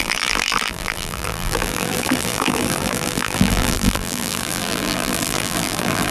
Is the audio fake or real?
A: fake